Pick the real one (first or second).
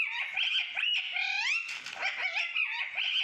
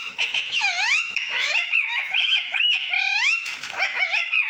first